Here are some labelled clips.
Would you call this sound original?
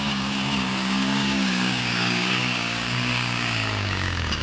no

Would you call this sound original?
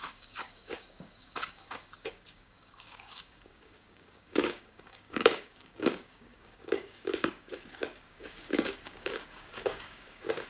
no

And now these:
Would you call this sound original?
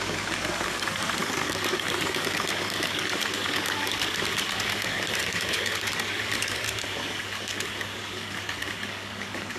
no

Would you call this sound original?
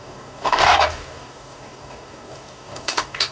no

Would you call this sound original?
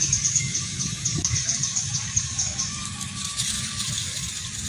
no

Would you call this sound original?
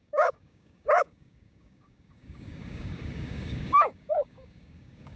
no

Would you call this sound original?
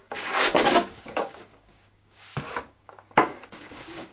no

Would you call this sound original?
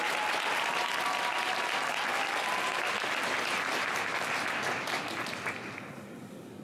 yes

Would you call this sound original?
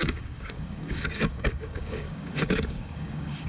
no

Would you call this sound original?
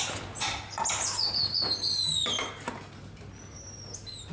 yes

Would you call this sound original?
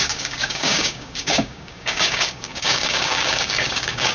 no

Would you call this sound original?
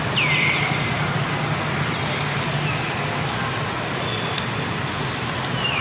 yes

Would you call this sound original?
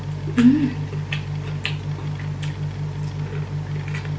yes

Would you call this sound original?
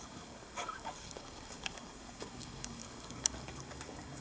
no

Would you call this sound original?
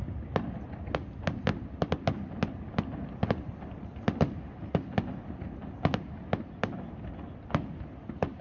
yes